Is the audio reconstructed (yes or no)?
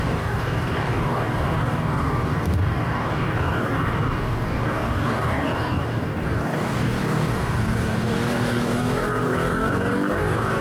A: yes